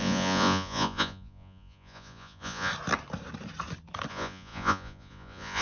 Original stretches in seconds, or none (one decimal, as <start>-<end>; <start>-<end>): 2.7-4.1